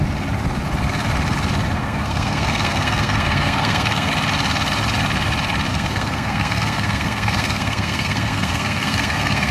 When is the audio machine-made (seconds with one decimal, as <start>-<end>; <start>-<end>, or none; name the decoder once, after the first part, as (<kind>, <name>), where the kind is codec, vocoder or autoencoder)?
1.8-4.1 (codec, SNAC); 5.7-9.5